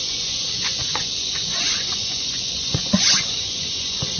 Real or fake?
fake